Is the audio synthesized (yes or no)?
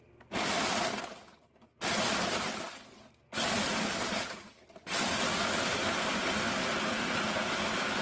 no